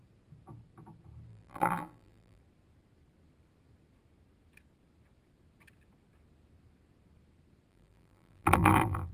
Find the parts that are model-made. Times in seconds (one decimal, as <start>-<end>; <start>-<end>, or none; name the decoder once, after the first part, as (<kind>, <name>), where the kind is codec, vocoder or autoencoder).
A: 1.3-2.4 (vocoder, BigVGAN v2); 7.7-9.1